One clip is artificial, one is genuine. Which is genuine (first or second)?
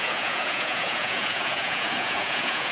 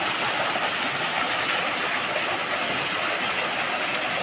second